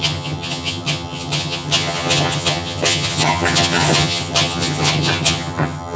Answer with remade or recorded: remade